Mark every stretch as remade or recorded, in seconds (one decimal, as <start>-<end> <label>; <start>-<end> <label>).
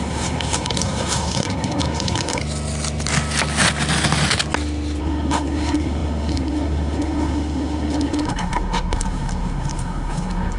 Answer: 0.0-2.4 remade; 2.4-5.0 recorded; 5.0-10.6 remade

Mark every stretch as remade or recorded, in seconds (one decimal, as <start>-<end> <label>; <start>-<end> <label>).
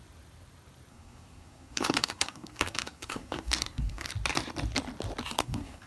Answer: 0.0-0.9 recorded; 0.9-4.1 remade; 4.1-5.4 recorded; 5.4-5.9 remade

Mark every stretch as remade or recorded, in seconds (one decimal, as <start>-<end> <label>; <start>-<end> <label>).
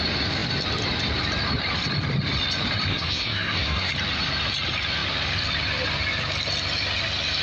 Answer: 0.0-2.9 recorded; 2.9-3.9 remade; 3.9-7.4 recorded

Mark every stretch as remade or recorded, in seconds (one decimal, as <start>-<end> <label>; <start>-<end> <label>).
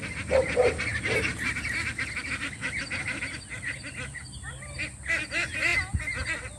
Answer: 0.0-6.6 recorded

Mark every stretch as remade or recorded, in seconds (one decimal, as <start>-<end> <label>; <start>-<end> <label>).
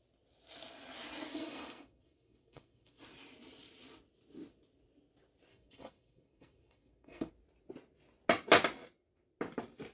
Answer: 0.0-1.3 recorded; 1.3-3.0 remade; 3.0-5.5 recorded; 5.5-7.3 remade; 7.3-9.9 recorded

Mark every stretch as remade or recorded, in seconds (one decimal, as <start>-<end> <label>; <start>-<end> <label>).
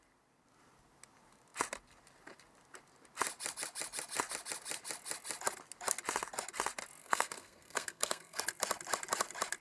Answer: 0.0-7.0 recorded; 7.0-8.4 remade; 8.4-9.6 recorded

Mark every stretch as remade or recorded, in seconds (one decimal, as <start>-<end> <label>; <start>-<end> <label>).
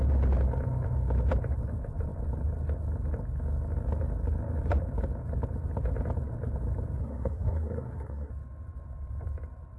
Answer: 0.0-7.0 recorded; 7.0-8.3 remade; 8.3-9.8 recorded